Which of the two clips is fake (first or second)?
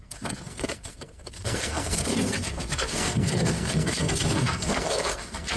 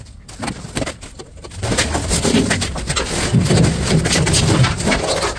first